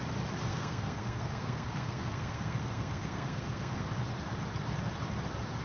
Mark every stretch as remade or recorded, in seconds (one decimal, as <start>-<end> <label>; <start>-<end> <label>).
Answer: 0.0-0.5 recorded; 0.5-3.9 remade; 3.9-5.6 recorded